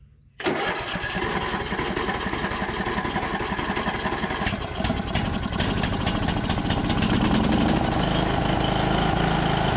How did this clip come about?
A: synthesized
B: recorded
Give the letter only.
B